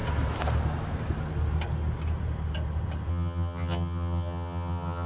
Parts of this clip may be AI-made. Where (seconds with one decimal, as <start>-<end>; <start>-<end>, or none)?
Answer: 3.1-5.1